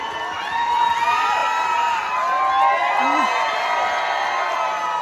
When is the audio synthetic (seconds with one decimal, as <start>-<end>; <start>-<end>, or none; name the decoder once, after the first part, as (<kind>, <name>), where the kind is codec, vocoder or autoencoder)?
none